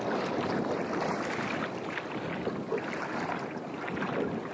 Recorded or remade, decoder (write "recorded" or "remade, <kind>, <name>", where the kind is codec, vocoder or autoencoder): recorded